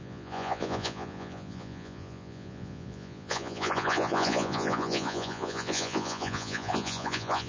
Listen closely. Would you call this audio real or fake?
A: fake